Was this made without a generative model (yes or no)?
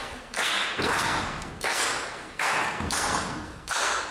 no